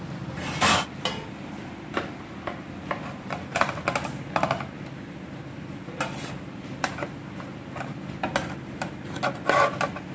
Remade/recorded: recorded